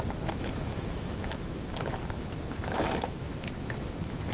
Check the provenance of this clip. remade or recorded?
remade